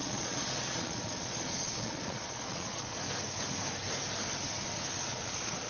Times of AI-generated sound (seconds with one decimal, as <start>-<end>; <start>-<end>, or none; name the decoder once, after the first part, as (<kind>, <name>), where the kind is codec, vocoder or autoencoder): 0.0-3.0 (vocoder, Vocos); 5.1-5.7